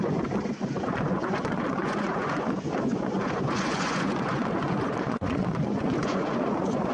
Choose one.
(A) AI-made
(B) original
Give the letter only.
A